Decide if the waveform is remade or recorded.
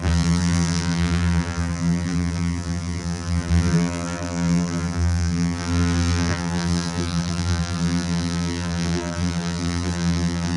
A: remade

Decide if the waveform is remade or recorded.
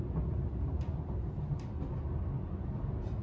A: recorded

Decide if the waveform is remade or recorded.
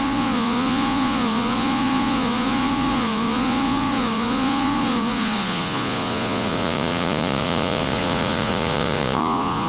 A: remade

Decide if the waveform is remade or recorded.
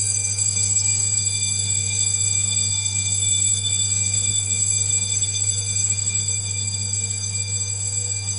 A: remade